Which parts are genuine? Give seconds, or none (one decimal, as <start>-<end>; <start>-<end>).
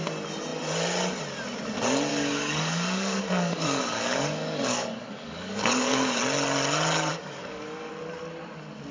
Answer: 0.0-2.1; 6.2-7.1; 7.9-8.9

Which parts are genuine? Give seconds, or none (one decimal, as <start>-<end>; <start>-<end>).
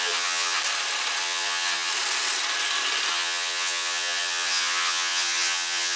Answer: 0.6-1.2; 1.9-3.1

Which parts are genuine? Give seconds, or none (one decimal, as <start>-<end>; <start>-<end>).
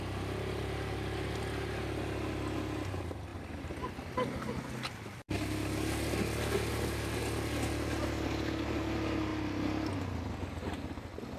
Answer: 0.0-11.4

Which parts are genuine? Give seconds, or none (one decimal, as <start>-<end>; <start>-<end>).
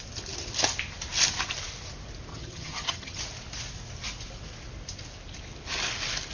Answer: 0.0-2.3; 3.2-6.3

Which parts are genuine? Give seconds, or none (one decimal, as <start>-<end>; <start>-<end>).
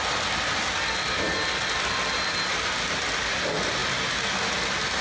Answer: 0.0-5.0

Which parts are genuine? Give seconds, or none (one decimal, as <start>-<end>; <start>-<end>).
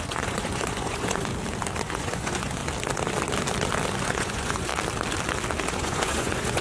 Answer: 1.3-1.9; 2.6-4.0; 4.7-5.7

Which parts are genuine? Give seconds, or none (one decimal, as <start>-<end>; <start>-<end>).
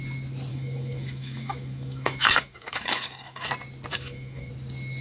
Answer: 0.0-0.5; 3.5-3.9; 4.5-5.0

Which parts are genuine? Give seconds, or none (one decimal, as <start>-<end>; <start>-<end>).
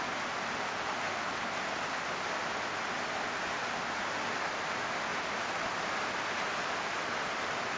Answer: 0.0-7.8